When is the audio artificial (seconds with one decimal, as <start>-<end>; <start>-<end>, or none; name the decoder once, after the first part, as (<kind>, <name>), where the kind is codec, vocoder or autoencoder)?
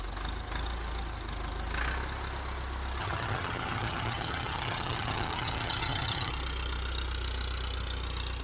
3.0-6.3 (vocoder, HiFi-GAN)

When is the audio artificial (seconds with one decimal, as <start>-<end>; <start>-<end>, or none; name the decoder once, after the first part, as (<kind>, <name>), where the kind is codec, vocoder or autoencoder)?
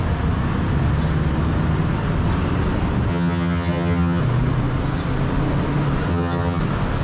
3.1-4.2 (vocoder, HiFi-GAN); 6.1-6.6